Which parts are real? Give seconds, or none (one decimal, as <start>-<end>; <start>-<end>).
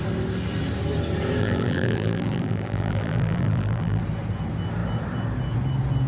0.0-1.4; 4.0-6.1